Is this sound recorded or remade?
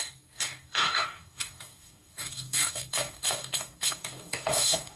remade